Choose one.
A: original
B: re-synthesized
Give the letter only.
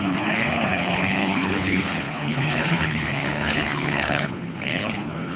B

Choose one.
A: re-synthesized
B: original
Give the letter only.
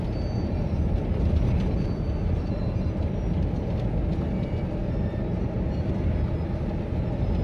B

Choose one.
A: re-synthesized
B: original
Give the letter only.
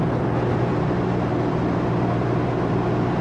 B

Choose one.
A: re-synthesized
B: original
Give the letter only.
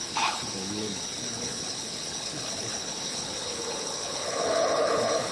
A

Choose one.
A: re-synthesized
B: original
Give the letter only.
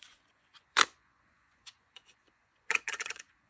A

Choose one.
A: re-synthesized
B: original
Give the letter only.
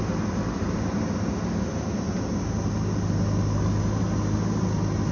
B